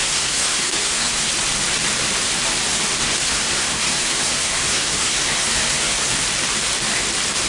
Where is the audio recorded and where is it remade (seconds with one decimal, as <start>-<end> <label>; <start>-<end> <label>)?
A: 0.0-1.3 remade; 1.3-3.0 recorded; 3.0-6.1 remade; 6.1-7.5 recorded